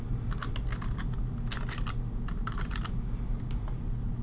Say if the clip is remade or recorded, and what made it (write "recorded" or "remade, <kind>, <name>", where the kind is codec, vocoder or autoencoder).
recorded